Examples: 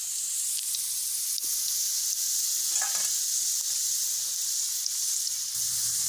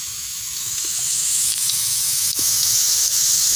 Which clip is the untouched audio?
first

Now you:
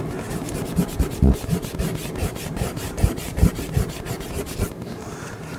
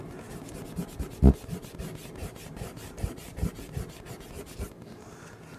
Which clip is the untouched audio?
second